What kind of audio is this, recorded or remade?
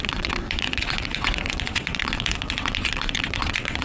remade